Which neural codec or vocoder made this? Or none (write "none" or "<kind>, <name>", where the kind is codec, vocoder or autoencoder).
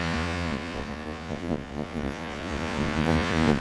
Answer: vocoder, Vocos